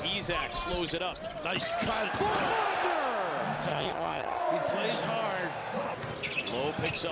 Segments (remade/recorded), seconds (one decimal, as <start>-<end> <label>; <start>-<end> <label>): 0.0-3.7 recorded; 3.7-4.4 remade; 4.4-7.1 recorded